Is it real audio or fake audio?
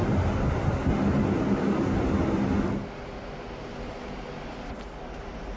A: real